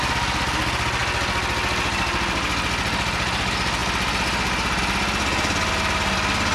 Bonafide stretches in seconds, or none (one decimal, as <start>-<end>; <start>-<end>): 0.0-6.5